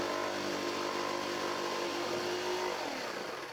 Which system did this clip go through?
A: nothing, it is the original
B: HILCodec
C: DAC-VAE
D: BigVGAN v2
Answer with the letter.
A